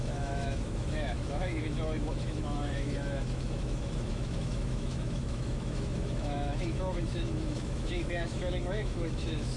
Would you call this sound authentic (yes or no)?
no